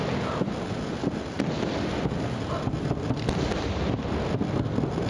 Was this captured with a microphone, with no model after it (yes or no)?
yes